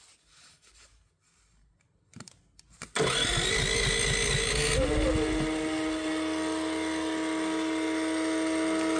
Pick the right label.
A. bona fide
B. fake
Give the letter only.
A